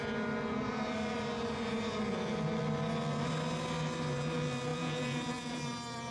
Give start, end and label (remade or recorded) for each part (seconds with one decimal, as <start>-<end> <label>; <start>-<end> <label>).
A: 0.0-4.7 recorded; 4.7-5.6 remade; 5.6-6.1 recorded